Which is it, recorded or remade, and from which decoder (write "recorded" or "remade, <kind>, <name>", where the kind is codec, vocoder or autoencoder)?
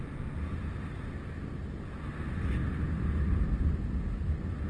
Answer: recorded